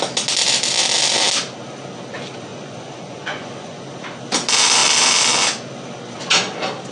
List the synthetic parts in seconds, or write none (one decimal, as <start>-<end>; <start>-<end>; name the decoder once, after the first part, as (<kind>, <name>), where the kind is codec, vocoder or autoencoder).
2.5-3.8 (vocoder, Vocos)